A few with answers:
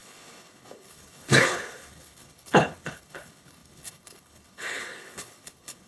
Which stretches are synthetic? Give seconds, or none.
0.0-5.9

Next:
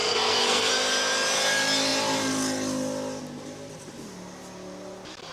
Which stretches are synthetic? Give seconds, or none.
0.0-0.7

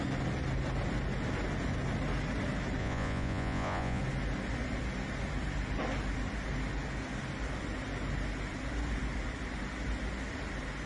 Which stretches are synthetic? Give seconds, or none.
2.8-4.0

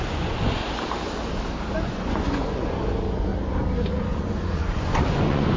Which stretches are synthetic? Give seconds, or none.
0.0-0.6; 1.7-3.3; 3.9-5.6

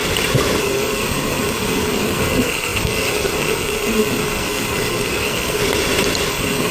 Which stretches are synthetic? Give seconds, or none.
0.6-5.6; 6.3-6.7

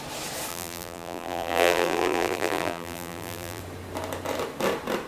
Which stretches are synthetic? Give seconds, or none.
0.5-3.6